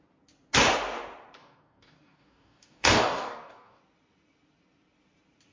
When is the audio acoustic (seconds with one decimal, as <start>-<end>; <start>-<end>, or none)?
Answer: 0.0-1.4; 3.8-5.5